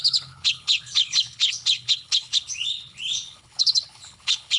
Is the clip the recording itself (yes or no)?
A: no